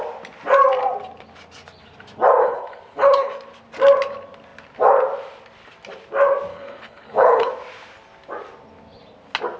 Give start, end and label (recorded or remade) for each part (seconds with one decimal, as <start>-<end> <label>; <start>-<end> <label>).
0.0-2.4 recorded; 2.4-3.3 remade; 3.3-6.5 recorded; 6.5-7.5 remade; 7.5-9.6 recorded

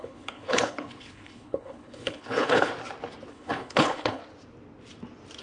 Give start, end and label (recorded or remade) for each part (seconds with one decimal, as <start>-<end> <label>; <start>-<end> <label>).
0.0-2.7 remade; 2.7-3.3 recorded; 3.3-4.2 remade; 4.2-5.4 recorded